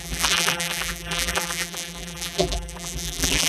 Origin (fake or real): fake